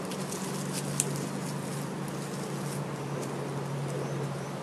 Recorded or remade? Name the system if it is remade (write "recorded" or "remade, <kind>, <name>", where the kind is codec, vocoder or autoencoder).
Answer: recorded